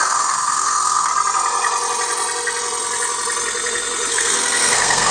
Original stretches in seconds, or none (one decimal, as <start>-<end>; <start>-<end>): 1.1-4.1